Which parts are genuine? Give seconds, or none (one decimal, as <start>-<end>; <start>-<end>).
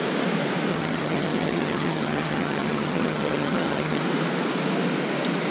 0.0-0.7; 4.0-5.5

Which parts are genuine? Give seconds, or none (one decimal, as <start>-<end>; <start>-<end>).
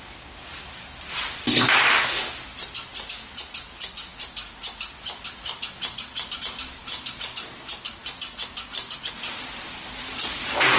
0.0-10.8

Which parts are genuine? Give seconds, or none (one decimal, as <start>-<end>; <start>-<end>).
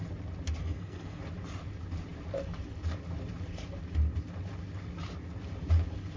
0.0-0.6; 1.2-6.2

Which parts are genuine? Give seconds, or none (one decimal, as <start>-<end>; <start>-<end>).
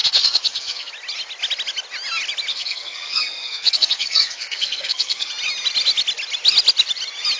0.9-2.5; 5.3-7.4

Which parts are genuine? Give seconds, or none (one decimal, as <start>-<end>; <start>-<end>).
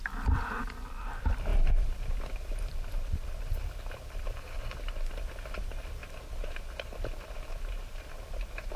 6.0-6.8